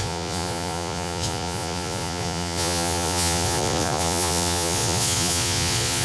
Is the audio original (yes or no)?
no